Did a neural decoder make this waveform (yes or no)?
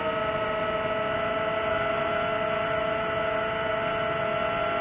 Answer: no